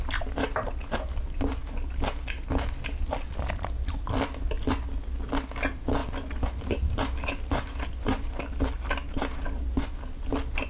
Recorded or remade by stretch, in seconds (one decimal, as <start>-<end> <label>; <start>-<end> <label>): 0.0-10.7 recorded